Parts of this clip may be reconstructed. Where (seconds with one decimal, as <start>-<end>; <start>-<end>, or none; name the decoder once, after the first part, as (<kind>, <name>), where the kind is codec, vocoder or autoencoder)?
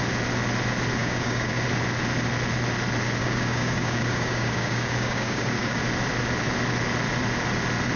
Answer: 1.0-1.6 (codec, DAC); 3.2-5.8